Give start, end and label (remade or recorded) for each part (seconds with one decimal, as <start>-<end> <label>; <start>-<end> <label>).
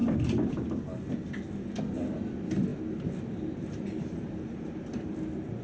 0.0-5.6 recorded